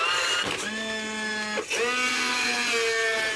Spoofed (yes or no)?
no